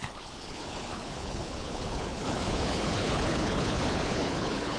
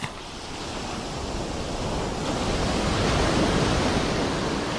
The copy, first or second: first